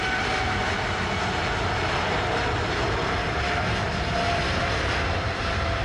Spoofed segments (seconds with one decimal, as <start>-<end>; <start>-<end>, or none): none